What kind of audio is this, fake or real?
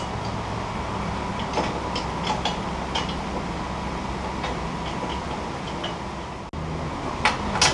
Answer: real